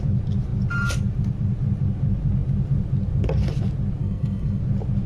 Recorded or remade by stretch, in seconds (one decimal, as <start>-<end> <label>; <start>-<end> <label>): 0.0-4.0 recorded; 4.0-4.6 remade; 4.6-5.1 recorded